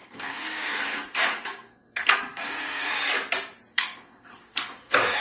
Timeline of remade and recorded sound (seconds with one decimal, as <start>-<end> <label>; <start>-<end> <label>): 0.0-2.9 remade; 2.9-3.7 recorded; 3.7-5.2 remade